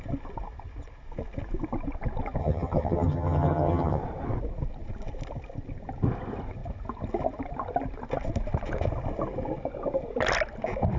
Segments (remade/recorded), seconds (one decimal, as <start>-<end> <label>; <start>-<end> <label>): 0.0-2.4 recorded; 2.4-4.0 remade; 4.0-11.0 recorded